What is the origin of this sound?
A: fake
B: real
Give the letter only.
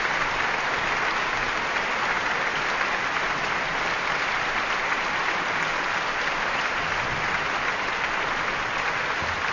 B